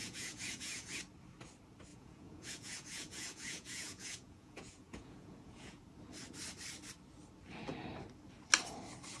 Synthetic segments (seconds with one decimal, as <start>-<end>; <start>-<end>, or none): 0.0-1.0; 1.9-5.8